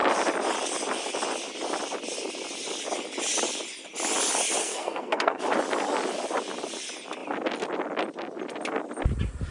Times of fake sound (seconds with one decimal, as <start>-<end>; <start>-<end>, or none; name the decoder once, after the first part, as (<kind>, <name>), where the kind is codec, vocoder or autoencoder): 4.6-5.4 (codec, SNAC)